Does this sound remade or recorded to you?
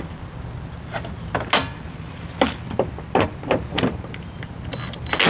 recorded